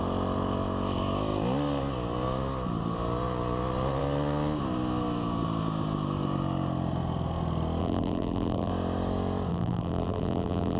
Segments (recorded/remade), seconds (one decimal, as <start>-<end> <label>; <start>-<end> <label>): 0.0-7.8 recorded; 7.8-8.7 remade; 8.7-9.5 recorded; 9.5-10.8 remade